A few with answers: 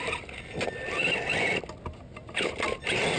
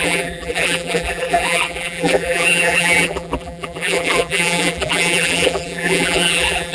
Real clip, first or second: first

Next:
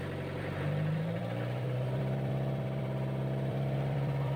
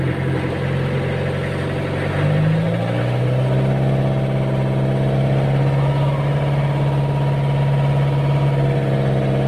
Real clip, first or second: second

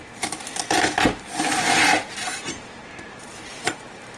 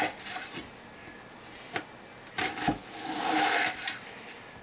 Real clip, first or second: second